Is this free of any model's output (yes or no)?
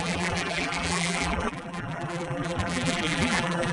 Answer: no